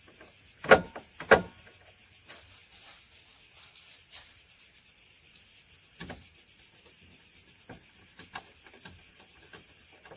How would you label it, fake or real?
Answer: fake